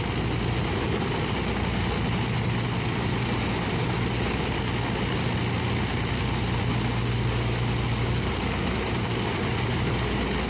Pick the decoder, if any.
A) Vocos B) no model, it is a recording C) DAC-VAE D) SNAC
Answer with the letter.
B